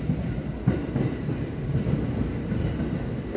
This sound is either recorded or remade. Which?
recorded